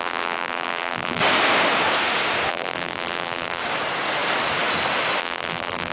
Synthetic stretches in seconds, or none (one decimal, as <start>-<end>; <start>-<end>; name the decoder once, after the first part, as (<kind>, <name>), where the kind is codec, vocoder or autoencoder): 0.0-1.2 (vocoder, BigVGAN v2); 2.5-3.6; 5.2-5.9